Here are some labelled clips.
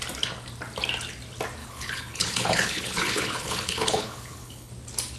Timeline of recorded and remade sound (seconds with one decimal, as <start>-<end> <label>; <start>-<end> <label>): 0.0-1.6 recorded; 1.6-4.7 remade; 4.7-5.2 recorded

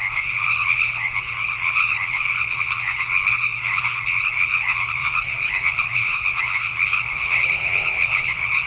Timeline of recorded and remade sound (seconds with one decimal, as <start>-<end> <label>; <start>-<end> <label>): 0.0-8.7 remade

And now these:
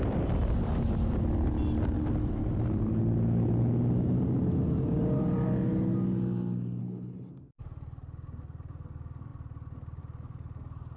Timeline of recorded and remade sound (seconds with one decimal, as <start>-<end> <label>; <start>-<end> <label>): 0.0-6.8 recorded; 6.8-7.3 remade; 7.3-11.0 recorded

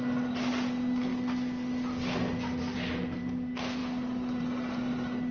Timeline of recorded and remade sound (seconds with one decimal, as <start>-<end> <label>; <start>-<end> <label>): 0.0-5.3 recorded

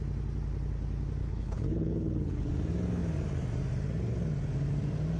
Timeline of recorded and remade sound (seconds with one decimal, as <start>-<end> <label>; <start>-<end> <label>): 0.0-1.2 recorded; 1.2-2.5 remade; 2.5-5.2 recorded

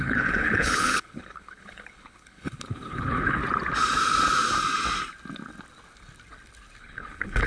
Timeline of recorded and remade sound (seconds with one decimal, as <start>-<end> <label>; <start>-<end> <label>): 0.0-3.4 remade; 3.4-6.8 recorded; 6.8-7.5 remade

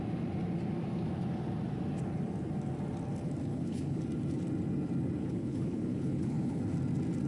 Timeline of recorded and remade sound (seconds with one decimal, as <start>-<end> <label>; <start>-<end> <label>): 0.0-3.5 recorded; 3.5-4.0 remade; 4.0-5.2 recorded; 5.2-6.6 remade; 6.6-7.3 recorded